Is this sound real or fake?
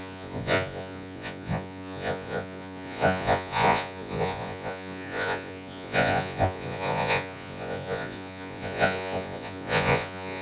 fake